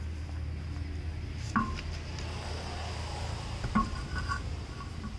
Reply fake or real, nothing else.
real